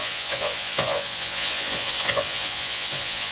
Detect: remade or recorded remade